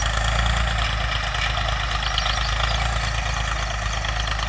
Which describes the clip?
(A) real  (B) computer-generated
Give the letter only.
A